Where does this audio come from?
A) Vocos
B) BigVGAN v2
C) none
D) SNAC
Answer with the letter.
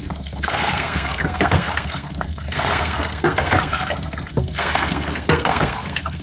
D